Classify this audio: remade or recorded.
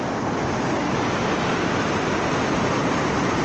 recorded